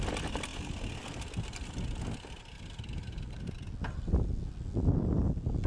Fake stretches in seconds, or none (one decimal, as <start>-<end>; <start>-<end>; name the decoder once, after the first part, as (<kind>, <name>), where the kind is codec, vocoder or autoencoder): none